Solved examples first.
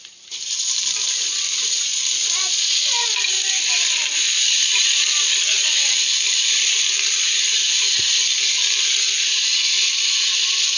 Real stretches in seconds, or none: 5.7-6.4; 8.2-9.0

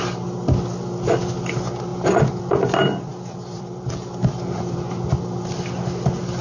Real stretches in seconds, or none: 0.0-1.9; 2.4-3.1; 4.8-6.4

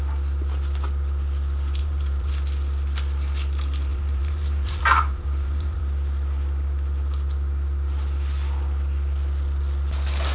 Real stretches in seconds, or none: 0.0-1.8; 2.3-3.9; 5.8-10.3

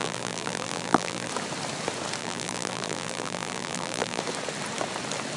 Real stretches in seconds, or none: 1.3-2.2; 4.2-5.4

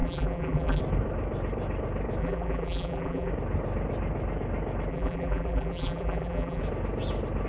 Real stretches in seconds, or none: 0.8-2.2; 3.3-4.9; 6.6-7.5

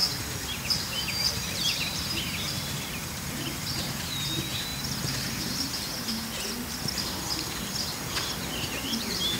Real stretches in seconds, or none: 0.0-0.7; 4.7-8.4

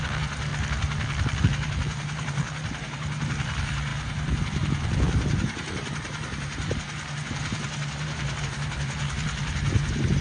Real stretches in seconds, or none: 0.5-1.4

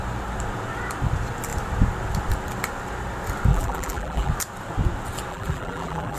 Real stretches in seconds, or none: 0.0-3.5; 4.3-5.3